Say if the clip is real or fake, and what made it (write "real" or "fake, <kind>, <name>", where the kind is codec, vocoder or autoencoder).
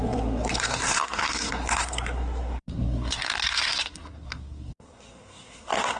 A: fake, codec, SNAC